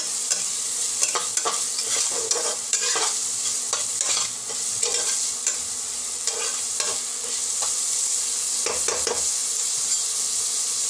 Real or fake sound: real